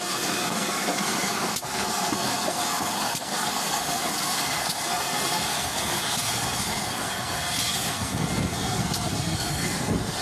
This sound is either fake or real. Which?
fake